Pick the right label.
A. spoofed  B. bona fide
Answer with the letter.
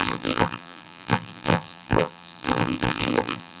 A